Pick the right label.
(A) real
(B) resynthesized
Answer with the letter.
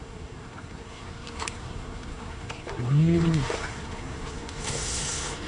B